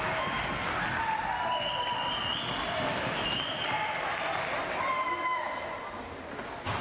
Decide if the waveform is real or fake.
real